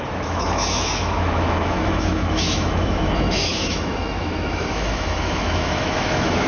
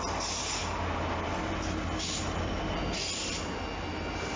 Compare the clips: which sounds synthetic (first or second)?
first